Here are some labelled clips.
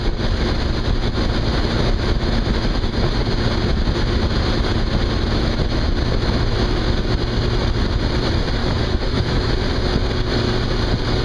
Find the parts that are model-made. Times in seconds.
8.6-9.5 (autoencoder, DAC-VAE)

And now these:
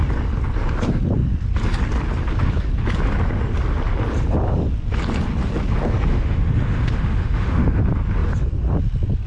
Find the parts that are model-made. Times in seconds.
6.1-7.8 (autoencoder, DAC-VAE)

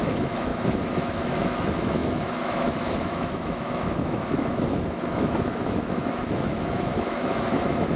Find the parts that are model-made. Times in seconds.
0.0-0.5 (autoencoder, DAC-VAE); 1.0-8.0

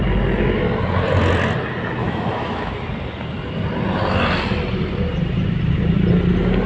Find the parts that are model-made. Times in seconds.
2.0-2.7 (autoencoder, DAC-VAE)